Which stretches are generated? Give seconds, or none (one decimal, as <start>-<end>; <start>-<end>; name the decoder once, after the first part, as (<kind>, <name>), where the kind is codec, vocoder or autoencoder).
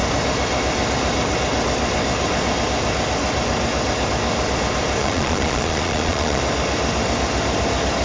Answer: 5.0-6.4 (vocoder, Vocos)